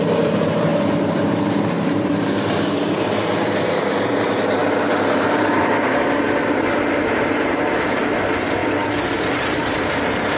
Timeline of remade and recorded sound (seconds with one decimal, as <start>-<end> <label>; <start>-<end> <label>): 0.0-8.6 remade; 8.6-9.3 recorded; 9.3-10.4 remade